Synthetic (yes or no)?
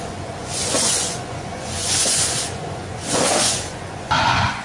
yes